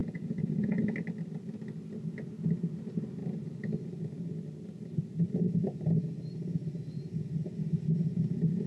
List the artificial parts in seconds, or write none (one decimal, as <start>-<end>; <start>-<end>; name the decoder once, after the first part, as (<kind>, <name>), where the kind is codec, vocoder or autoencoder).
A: 0.0-0.8 (vocoder, Vocos)